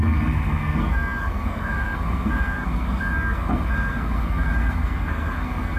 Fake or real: fake